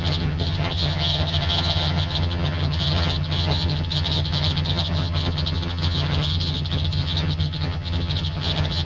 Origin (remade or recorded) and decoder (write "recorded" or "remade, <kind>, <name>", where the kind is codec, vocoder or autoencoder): remade, vocoder, HiFi-GAN